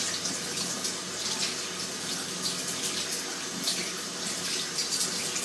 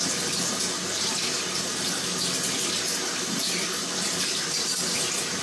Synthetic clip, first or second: second